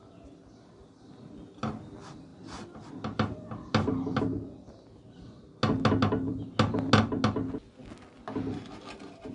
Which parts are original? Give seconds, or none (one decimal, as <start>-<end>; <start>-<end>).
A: 0.0-9.3